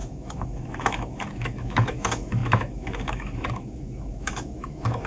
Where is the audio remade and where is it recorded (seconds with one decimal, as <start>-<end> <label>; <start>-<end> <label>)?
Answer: 0.0-5.1 remade